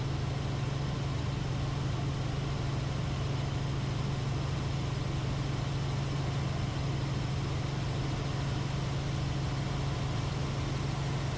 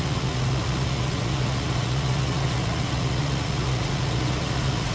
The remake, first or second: second